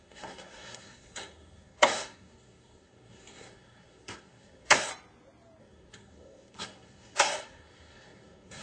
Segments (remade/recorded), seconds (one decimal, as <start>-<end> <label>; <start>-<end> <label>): 0.0-4.9 remade; 4.9-5.6 recorded; 5.6-8.6 remade